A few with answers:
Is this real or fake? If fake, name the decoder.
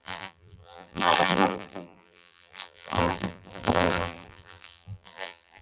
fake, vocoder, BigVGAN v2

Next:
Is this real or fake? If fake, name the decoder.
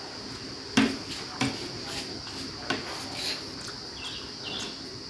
real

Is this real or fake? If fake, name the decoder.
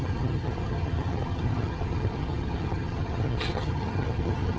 fake, vocoder, HiFi-GAN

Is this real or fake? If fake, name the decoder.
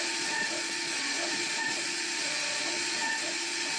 fake, vocoder, Vocos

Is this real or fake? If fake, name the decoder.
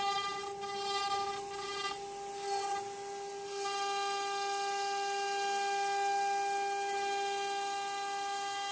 real